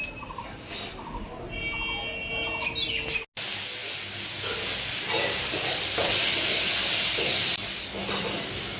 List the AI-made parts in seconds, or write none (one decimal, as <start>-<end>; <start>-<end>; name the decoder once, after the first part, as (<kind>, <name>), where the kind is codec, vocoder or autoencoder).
none